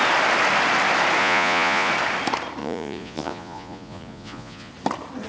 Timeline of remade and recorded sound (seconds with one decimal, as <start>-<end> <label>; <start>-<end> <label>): 0.0-1.2 recorded; 1.2-1.9 remade; 1.9-2.6 recorded; 2.6-4.7 remade; 4.7-5.3 recorded